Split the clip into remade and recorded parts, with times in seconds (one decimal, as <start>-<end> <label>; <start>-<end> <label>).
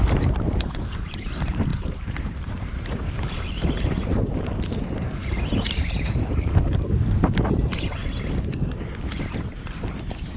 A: 0.0-8.0 remade; 8.0-9.6 recorded; 9.6-10.4 remade